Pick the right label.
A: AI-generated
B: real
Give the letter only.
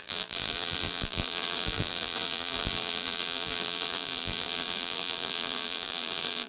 A